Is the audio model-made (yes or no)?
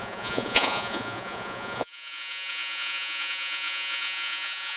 yes